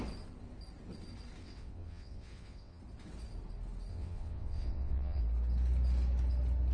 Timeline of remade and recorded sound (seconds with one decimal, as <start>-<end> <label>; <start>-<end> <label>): 0.0-1.4 recorded; 1.4-2.8 remade; 2.8-3.9 recorded; 3.9-5.2 remade; 5.2-6.7 recorded